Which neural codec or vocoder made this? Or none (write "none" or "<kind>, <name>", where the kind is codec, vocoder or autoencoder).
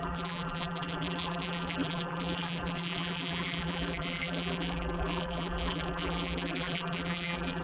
vocoder, BigVGAN v2